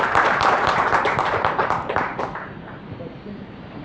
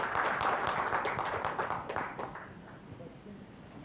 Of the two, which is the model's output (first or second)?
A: first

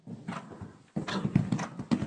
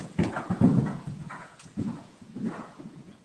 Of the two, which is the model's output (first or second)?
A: second